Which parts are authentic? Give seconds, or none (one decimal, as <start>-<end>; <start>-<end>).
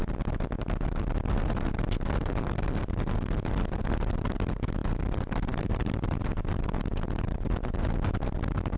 0.0-8.8